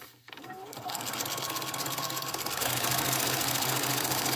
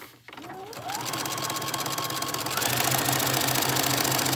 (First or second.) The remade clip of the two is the first